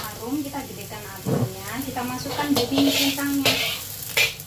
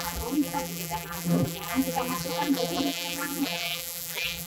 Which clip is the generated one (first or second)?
second